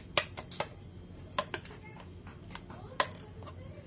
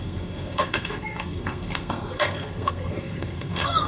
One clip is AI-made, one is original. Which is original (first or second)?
first